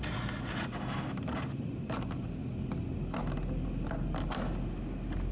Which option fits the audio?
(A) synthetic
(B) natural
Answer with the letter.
B